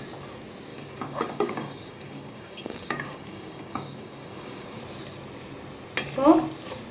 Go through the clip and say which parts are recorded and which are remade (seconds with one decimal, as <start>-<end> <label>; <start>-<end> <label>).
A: 0.0-0.7 recorded; 0.7-4.8 remade; 4.8-6.9 recorded